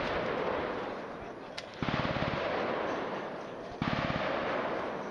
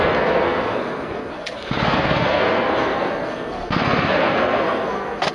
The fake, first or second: second